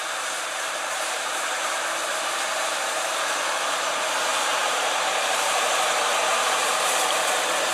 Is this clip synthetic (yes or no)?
yes